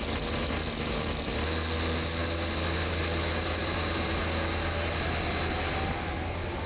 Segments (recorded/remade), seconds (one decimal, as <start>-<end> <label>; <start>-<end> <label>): 0.0-3.6 recorded; 3.6-4.1 remade; 4.1-6.7 recorded